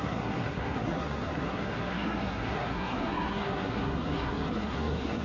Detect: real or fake fake